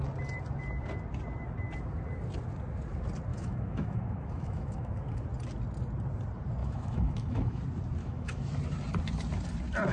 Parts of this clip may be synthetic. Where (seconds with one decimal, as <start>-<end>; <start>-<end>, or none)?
3.3-4.9; 6.6-7.6; 8.0-8.6